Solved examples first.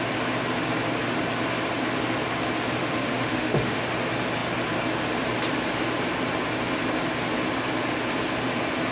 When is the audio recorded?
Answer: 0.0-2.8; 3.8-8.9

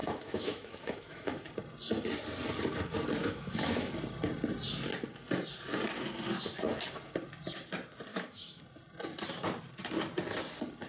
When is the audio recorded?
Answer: 1.5-3.2; 3.9-8.1; 8.6-10.9

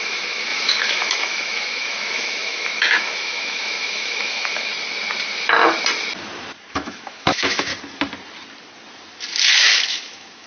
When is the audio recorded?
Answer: 4.7-6.7; 7.7-9.5

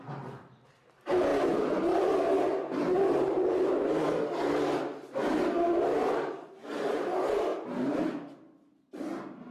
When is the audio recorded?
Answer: 0.0-9.5